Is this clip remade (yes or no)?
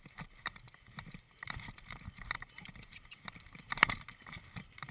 yes